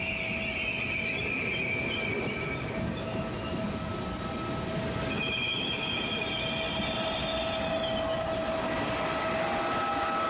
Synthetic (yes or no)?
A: no